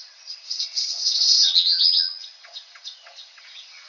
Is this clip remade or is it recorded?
remade